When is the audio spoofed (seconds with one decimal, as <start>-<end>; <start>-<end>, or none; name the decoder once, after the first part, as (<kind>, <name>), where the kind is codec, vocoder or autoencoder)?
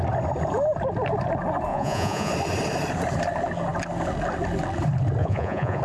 1.7-2.3 (vocoder, Vocos); 5.2-5.8